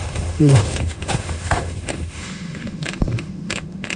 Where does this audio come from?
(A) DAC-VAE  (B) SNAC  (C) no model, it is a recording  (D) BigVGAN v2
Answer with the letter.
A